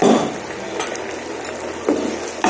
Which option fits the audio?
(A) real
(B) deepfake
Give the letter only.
A